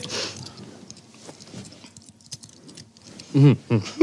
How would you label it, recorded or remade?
recorded